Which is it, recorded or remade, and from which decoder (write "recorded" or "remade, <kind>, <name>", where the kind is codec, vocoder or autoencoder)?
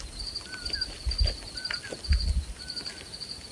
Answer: recorded